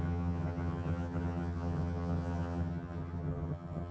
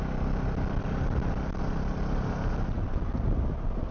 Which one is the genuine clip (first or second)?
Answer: second